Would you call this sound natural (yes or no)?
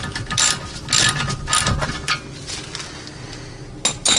yes